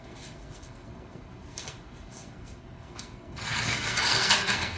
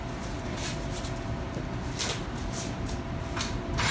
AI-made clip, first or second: first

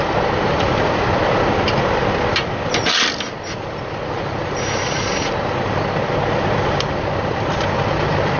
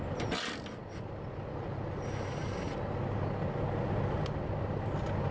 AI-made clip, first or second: first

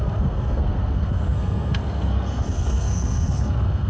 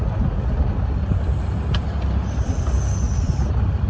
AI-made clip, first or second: first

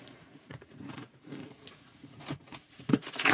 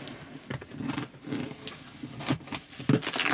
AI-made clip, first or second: first